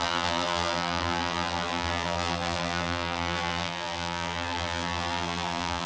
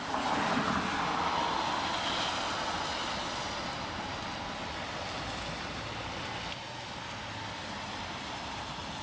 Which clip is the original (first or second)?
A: second